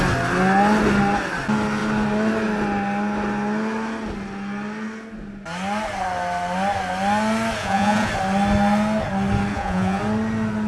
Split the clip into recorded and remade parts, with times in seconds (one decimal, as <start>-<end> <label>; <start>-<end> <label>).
0.0-7.6 recorded; 7.6-8.1 remade; 8.1-9.5 recorded; 9.5-10.0 remade; 10.0-10.7 recorded